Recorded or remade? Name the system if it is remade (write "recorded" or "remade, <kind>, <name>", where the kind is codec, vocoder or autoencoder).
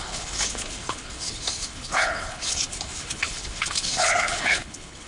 remade, codec, HILCodec